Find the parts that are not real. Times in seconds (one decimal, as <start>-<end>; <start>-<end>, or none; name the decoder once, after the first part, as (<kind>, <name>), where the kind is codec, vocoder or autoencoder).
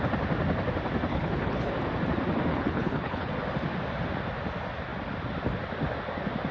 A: 1.1-1.7 (codec, HILCodec); 2.5-3.3